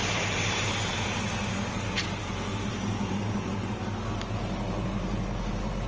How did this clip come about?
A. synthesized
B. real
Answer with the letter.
B